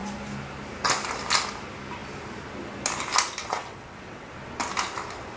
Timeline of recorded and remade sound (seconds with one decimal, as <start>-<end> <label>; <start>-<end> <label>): 0.0-3.4 recorded; 3.4-4.3 remade; 4.3-5.4 recorded